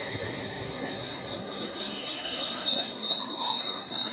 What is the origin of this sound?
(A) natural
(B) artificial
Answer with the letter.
B